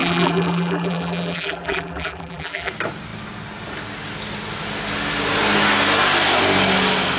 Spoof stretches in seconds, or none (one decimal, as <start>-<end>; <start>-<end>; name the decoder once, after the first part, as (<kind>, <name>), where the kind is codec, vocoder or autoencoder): 0.0-2.7 (vocoder, BigVGAN v2)